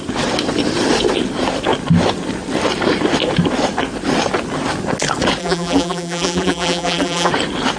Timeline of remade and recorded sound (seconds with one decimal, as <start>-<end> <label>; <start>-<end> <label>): 0.0-5.4 recorded; 5.4-7.3 remade; 7.3-7.8 recorded